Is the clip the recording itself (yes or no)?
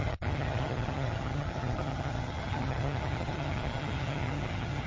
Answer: no